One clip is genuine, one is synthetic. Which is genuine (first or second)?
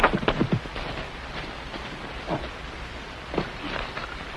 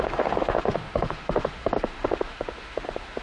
first